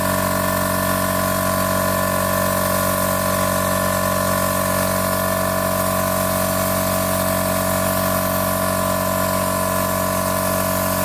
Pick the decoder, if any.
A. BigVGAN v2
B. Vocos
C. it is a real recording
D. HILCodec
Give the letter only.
C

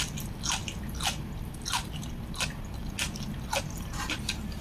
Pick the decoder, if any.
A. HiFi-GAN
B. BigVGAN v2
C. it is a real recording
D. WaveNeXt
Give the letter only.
C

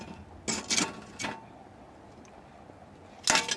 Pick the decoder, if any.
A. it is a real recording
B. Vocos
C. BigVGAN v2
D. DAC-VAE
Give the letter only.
A